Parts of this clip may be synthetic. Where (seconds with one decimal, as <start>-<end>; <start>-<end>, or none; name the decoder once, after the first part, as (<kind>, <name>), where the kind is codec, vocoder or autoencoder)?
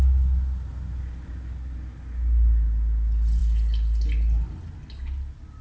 none